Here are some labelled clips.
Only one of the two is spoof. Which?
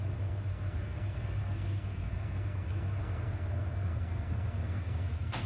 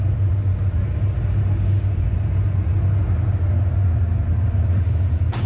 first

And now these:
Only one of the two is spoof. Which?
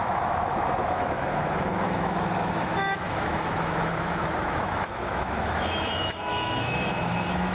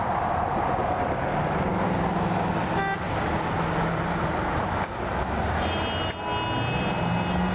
first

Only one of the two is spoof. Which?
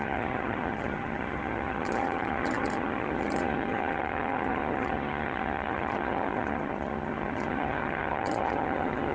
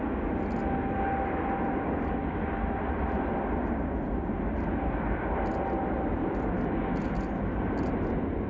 first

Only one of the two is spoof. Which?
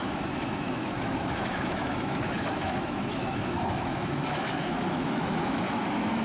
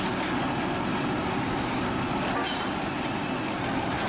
first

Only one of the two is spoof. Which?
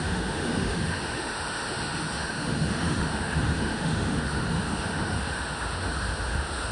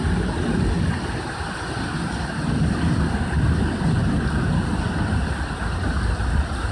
first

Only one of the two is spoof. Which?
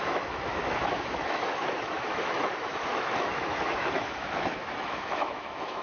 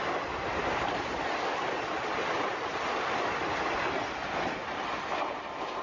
first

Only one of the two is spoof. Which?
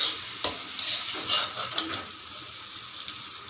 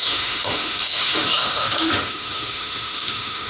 second